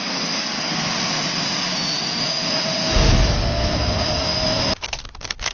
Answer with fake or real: real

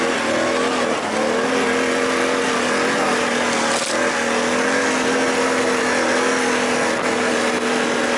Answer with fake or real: real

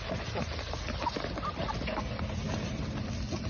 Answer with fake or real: real